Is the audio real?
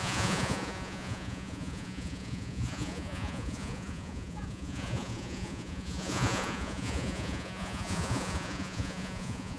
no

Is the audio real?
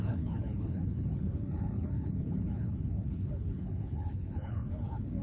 no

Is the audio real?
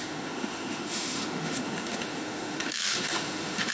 no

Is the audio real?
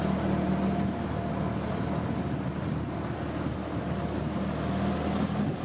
yes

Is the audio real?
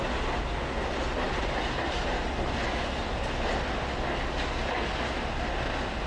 yes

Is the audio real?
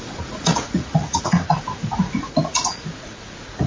no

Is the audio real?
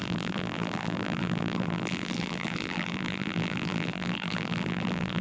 no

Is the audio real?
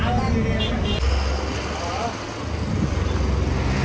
yes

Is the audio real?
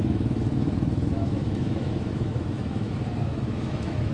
no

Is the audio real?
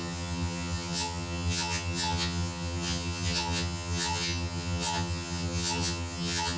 no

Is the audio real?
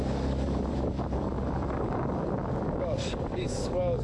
no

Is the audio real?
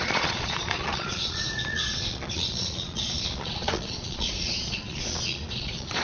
no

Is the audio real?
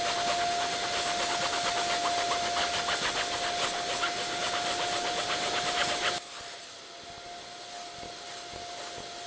yes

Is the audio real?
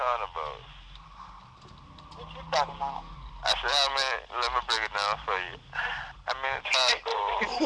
yes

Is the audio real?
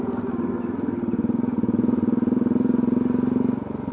yes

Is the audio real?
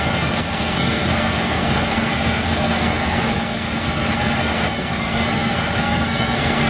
no